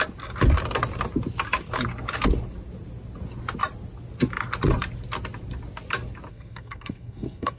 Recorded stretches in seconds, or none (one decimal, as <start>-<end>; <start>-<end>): 0.0-6.3